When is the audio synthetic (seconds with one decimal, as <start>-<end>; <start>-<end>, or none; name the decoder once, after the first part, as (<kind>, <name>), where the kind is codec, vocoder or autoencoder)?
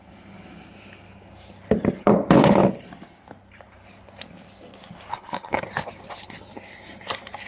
5.1-5.6 (codec, HILCodec)